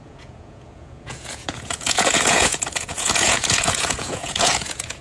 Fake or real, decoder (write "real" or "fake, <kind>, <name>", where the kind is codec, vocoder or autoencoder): fake, vocoder, Vocos